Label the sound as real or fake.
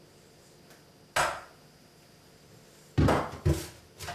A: real